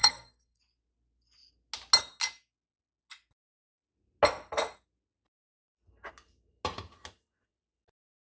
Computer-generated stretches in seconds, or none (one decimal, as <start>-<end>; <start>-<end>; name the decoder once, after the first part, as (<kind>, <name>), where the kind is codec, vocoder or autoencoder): 0.0-0.6 (codec, SNAC)